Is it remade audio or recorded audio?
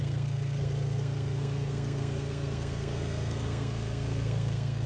remade